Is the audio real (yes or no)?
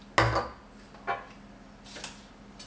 yes